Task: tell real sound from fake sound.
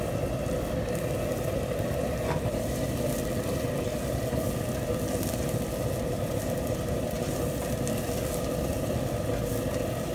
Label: real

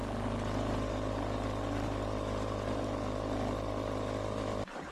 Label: real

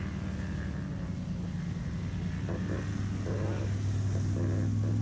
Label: real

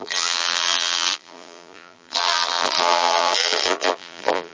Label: fake